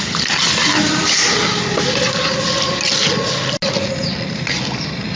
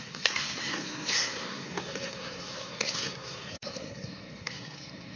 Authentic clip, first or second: first